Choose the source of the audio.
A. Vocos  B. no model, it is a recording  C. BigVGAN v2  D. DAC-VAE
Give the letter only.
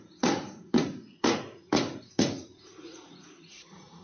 A